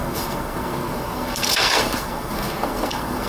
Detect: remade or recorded remade